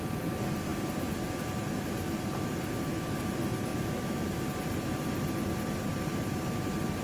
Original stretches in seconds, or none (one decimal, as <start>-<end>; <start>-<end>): 0.0-3.7; 4.4-7.0